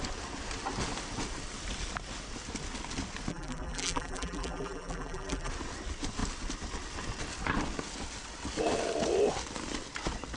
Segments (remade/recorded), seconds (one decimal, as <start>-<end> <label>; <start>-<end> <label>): 0.0-3.3 recorded; 3.3-5.5 remade; 5.5-10.4 recorded